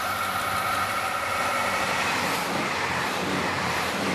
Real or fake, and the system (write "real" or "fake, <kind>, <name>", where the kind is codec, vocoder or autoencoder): real